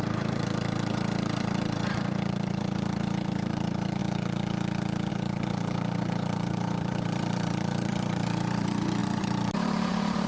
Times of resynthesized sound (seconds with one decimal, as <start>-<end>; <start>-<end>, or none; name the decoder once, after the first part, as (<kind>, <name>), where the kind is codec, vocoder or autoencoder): 0.0-4.0 (vocoder, BigVGAN v2); 5.1-10.3